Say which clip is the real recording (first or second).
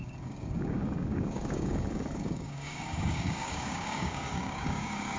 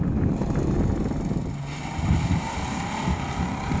second